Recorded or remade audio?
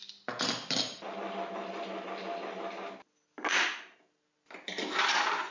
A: recorded